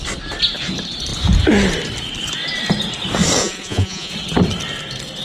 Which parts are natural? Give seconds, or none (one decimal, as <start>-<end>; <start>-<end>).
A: 0.0-3.4; 4.1-5.2